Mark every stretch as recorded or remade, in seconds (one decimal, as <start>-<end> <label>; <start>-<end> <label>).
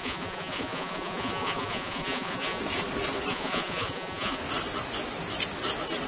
0.0-2.6 remade; 2.6-3.3 recorded; 3.3-4.4 remade; 4.4-6.1 recorded